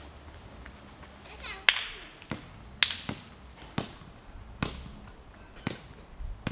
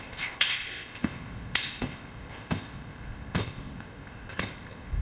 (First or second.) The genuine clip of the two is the first